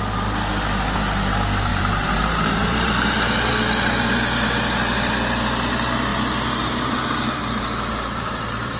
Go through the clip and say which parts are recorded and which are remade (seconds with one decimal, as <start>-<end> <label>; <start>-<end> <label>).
0.0-1.7 recorded; 1.7-3.5 remade; 3.5-6.1 recorded; 6.1-8.8 remade